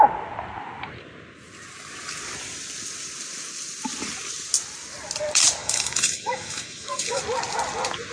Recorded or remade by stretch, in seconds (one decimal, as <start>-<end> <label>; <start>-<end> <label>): 0.0-5.6 recorded; 5.6-7.2 remade; 7.2-8.1 recorded